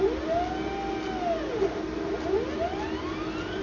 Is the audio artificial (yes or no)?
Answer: no